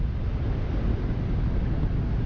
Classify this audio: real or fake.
real